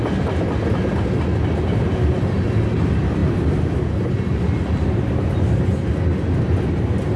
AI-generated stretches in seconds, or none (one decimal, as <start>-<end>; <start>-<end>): none